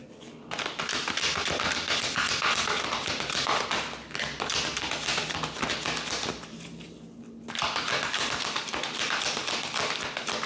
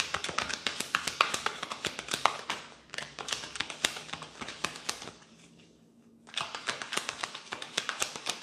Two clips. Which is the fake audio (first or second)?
second